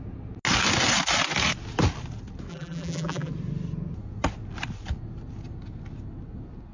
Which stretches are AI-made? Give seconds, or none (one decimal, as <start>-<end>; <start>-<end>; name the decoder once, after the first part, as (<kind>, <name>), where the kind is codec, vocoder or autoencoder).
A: 2.5-3.3 (vocoder, BigVGAN v2)